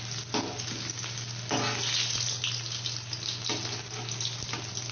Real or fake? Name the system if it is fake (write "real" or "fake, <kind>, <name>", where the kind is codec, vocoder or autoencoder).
real